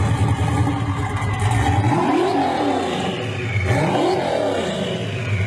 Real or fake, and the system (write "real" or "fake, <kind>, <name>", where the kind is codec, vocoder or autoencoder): real